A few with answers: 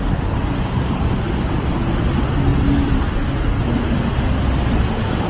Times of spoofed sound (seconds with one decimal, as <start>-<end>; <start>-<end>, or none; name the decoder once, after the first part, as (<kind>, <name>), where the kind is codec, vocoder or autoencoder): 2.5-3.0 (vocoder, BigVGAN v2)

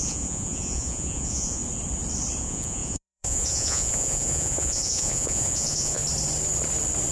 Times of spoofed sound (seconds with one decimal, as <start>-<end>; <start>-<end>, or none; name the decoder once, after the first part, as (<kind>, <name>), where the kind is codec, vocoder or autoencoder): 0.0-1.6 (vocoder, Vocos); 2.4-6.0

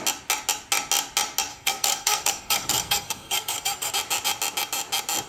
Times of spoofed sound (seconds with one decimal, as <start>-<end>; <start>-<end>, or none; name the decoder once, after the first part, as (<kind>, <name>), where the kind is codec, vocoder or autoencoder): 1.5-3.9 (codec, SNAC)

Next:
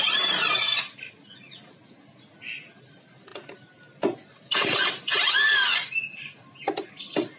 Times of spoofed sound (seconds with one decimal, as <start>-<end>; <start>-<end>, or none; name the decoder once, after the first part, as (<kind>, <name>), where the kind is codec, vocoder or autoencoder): none

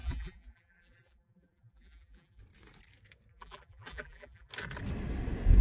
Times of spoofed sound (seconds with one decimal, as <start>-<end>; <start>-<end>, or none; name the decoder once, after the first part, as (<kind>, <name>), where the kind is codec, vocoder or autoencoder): 0.0-2.4 (vocoder, BigVGAN v2); 3.3-4.5

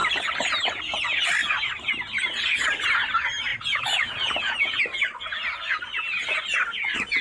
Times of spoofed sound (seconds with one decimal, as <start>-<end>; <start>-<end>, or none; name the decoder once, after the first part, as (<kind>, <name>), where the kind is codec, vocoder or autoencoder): 3.5-4.8 (vocoder, Vocos)

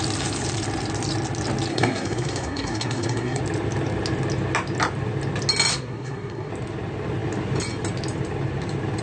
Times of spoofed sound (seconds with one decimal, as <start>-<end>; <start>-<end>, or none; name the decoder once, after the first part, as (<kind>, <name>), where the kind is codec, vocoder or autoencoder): 1.7-3.4 (codec, SNAC); 5.7-6.5